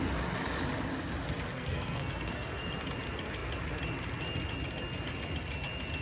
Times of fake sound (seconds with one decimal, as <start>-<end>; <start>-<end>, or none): 1.5-2.7